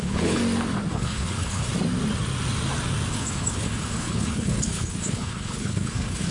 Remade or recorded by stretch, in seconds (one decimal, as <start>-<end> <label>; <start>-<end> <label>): 0.0-0.4 remade; 0.4-0.9 recorded; 0.9-1.7 remade; 1.7-3.1 recorded; 3.1-6.3 remade

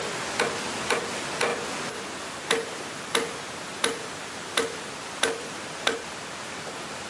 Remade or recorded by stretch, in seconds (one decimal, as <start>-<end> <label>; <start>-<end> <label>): 0.0-7.1 recorded